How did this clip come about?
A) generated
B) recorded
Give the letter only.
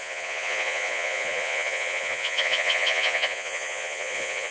A